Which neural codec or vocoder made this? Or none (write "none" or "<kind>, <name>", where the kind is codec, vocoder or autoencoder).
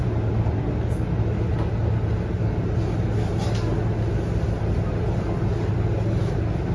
none